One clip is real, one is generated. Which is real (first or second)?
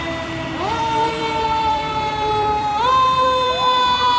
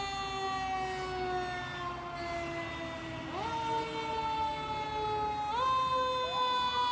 second